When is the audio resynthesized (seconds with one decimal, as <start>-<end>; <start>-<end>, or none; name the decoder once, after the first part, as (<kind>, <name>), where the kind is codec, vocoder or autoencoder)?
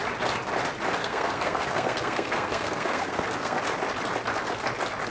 1.0-3.6 (codec, SNAC)